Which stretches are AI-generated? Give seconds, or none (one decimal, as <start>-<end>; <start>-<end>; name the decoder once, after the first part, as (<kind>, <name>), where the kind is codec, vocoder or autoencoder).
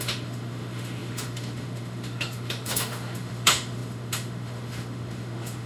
0.0-5.7 (autoencoder, DAC-VAE)